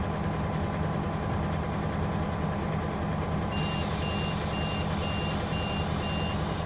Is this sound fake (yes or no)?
no